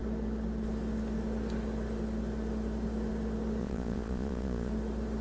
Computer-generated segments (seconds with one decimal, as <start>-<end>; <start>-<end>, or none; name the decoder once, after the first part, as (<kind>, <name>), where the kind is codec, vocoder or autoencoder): 3.6-4.7 (vocoder, Vocos)